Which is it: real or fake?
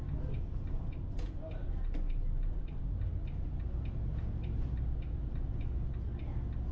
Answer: real